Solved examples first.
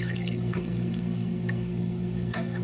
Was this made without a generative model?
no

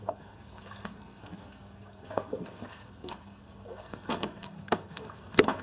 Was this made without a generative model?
no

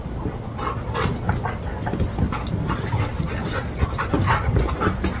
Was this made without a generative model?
yes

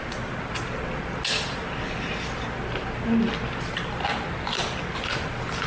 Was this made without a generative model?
yes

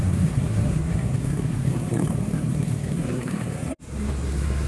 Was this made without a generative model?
no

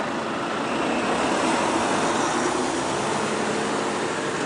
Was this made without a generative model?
yes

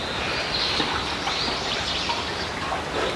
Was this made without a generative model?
yes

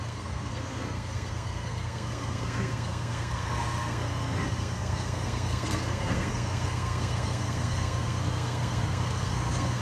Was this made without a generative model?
no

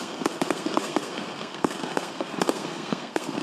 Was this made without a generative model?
no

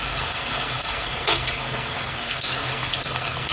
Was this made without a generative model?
no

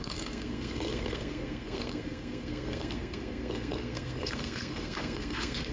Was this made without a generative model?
no